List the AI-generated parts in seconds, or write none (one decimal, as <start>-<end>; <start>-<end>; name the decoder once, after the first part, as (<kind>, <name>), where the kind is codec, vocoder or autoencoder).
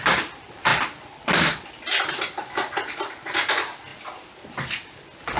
none